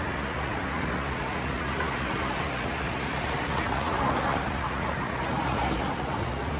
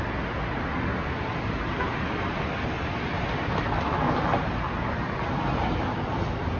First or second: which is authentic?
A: second